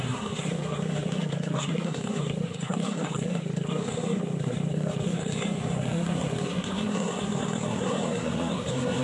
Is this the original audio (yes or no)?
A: no